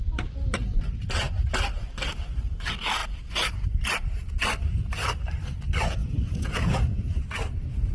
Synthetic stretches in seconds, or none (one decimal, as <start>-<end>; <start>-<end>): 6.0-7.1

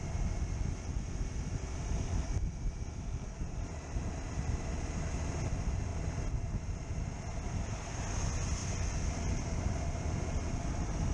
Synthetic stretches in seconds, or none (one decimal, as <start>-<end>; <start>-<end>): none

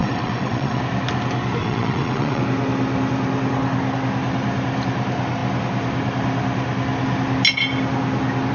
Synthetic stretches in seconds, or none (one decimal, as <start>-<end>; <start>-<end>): 0.0-0.8; 1.6-2.4